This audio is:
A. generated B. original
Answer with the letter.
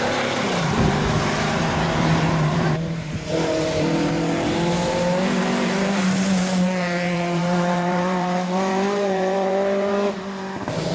A